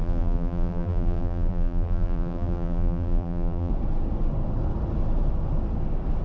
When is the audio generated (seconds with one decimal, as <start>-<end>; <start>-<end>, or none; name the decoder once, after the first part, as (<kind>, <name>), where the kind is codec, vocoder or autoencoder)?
0.0-3.7 (vocoder, BigVGAN v2)